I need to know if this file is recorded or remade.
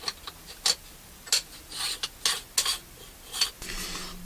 recorded